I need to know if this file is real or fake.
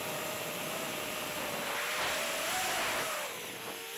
real